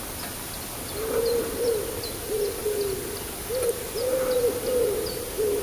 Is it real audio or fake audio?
real